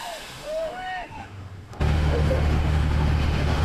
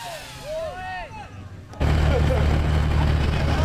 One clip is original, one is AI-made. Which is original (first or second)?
second